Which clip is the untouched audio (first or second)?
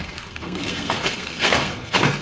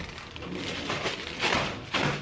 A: second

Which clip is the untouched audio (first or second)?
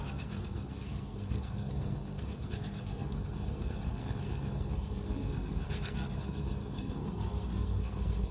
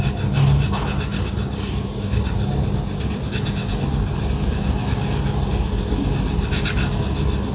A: second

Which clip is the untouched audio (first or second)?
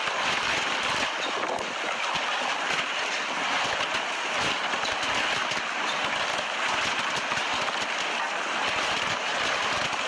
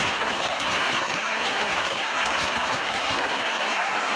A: first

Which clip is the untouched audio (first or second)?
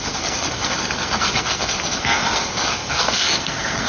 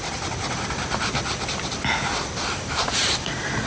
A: second